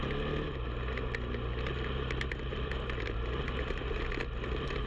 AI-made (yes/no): no